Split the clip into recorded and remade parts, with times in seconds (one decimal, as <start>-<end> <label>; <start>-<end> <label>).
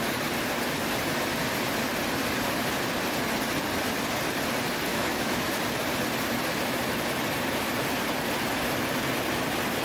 0.0-4.9 recorded; 4.9-5.5 remade; 5.5-9.8 recorded